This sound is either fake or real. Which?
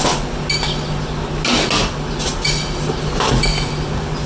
real